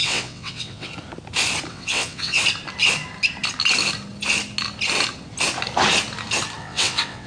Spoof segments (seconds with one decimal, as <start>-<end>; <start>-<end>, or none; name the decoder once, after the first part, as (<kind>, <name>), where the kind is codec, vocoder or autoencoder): 0.0-0.9 (vocoder, WaveNeXt); 1.7-2.4; 6.6-7.3